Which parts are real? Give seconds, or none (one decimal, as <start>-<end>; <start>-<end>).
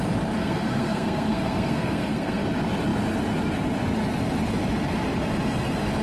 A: 0.0-0.4; 2.4-6.0